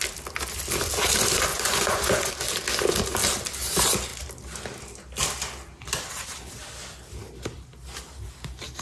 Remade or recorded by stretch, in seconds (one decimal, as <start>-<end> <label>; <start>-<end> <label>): 0.0-1.5 recorded; 1.5-2.3 remade; 2.3-8.8 recorded